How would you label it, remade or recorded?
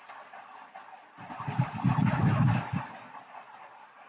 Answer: recorded